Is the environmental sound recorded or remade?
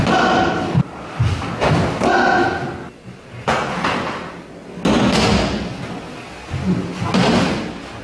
recorded